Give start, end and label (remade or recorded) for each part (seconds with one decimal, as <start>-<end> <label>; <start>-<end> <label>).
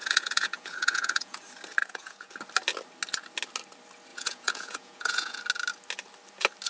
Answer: 0.0-1.4 remade; 1.4-1.8 recorded; 1.8-2.3 remade; 2.3-4.1 recorded; 4.1-5.4 remade; 5.4-6.7 recorded